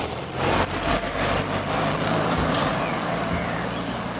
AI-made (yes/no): yes